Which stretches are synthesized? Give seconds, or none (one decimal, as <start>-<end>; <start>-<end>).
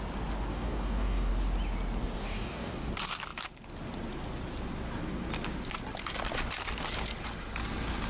0.5-1.3; 2.2-2.9